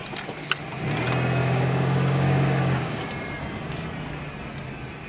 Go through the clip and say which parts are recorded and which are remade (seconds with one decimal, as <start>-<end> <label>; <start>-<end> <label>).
0.0-1.4 recorded; 1.4-3.1 remade; 3.1-5.1 recorded